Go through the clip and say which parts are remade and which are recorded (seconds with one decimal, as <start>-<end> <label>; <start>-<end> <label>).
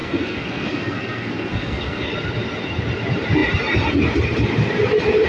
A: 0.0-2.1 remade; 2.1-5.3 recorded